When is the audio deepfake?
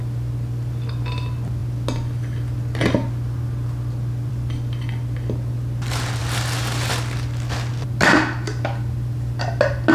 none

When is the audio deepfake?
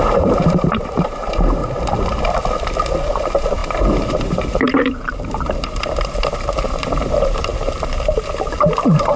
0.0-1.6 (vocoder, BigVGAN v2); 3.1-7.5; 8.6-9.2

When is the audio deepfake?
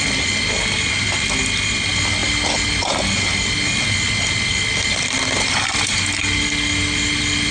none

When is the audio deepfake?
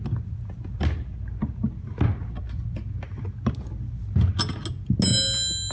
none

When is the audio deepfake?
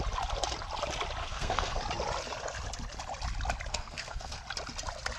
1.2-1.8 (codec, SNAC); 3.7-4.4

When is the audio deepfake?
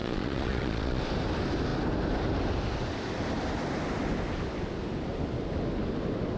0.0-1.0 (vocoder, Vocos)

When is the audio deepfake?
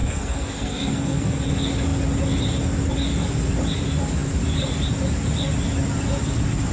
0.0-1.5 (codec, SNAC)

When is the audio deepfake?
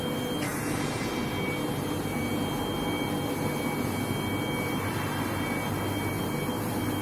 none